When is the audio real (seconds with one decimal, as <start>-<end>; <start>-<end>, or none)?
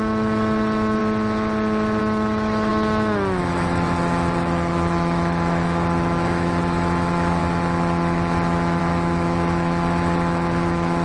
1.0-2.0; 7.4-8.8